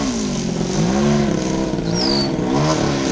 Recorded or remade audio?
recorded